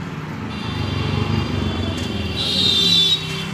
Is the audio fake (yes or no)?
no